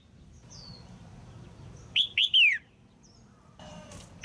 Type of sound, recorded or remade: remade